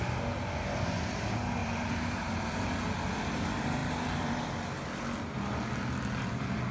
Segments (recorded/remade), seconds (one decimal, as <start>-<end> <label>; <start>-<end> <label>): 0.0-1.6 recorded; 1.6-2.3 remade; 2.3-6.7 recorded